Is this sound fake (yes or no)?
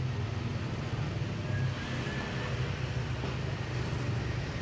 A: no